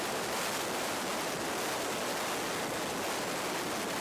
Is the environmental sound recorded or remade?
recorded